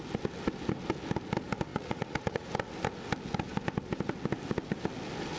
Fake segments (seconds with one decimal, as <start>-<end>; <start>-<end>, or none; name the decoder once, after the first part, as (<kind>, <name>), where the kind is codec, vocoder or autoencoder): 1.7-2.5 (vocoder, Vocos)